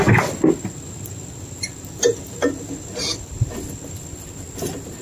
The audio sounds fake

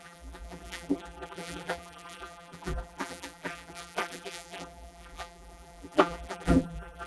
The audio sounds fake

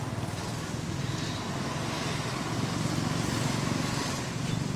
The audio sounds real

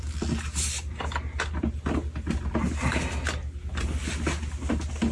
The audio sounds real